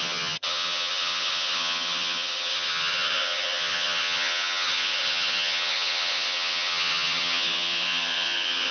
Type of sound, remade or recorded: remade